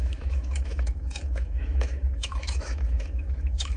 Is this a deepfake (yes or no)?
yes